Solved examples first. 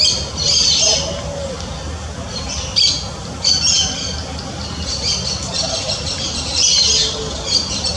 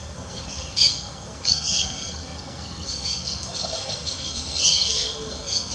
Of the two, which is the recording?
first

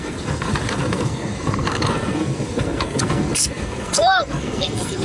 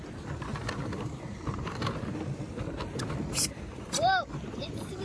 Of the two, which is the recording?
second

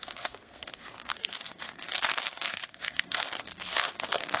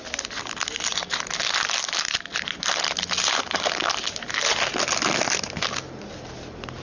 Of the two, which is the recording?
second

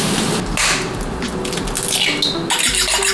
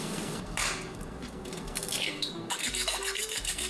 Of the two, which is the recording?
first